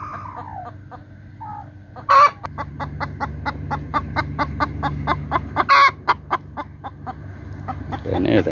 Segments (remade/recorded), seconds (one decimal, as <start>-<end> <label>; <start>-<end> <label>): 0.0-1.5 recorded; 1.5-2.7 remade; 2.7-3.9 recorded; 3.9-4.5 remade; 4.5-8.5 recorded